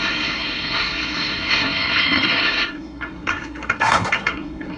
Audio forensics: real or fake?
fake